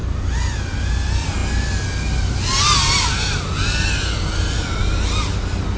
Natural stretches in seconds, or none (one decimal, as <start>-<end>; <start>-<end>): 0.0-5.8